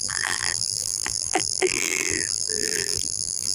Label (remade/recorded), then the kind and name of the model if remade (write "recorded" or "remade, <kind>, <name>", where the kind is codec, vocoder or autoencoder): remade, vocoder, BigVGAN v2